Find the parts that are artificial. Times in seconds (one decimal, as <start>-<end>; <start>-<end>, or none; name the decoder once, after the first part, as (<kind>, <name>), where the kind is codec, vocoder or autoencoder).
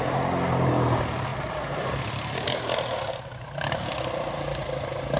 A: none